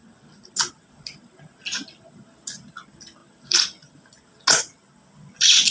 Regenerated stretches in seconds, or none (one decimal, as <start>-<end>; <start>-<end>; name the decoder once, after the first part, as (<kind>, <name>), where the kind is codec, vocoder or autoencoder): 3.2-4.2 (vocoder, BigVGAN v2)